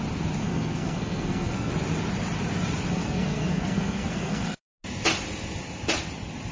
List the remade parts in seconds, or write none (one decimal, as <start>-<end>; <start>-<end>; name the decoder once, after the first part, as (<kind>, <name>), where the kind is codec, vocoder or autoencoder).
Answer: 0.4-1.7 (codec, SNAC); 2.9-4.7